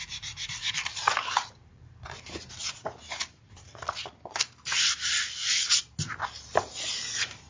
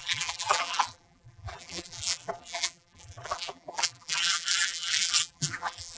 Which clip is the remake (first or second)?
second